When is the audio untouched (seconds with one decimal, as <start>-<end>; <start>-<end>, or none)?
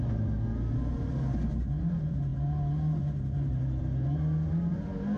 0.0-5.2